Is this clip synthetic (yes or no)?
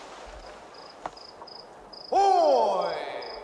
no